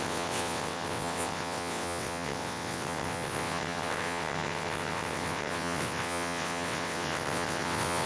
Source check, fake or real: fake